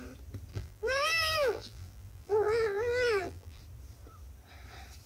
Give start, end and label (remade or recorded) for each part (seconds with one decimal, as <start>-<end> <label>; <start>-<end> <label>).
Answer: 0.0-0.5 recorded; 0.5-3.6 remade; 3.6-5.1 recorded